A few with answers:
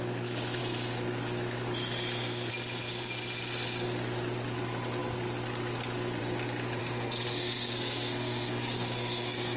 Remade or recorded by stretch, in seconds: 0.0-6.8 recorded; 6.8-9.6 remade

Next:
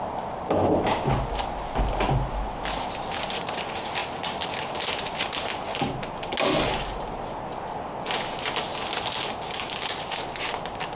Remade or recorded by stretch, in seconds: 0.0-11.0 recorded

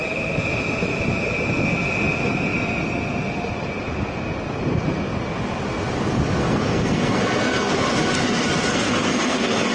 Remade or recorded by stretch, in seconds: 0.0-6.4 recorded; 6.4-7.8 remade; 7.8-8.7 recorded; 8.7-9.7 remade

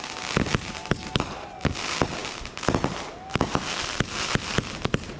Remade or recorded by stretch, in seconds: 0.0-5.2 recorded

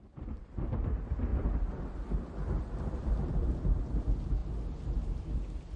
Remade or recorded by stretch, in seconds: 0.0-5.8 remade